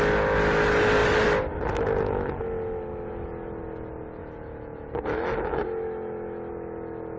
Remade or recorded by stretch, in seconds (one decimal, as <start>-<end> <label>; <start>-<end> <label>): 0.0-4.2 recorded; 4.2-6.5 remade; 6.5-7.2 recorded